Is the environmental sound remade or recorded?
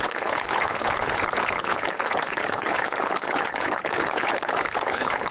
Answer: remade